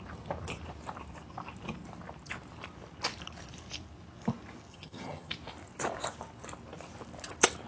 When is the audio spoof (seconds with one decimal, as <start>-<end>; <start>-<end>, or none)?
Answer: 4.7-5.3